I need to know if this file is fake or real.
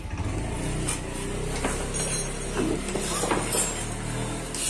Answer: real